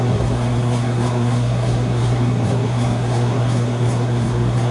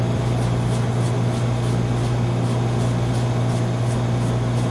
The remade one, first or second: first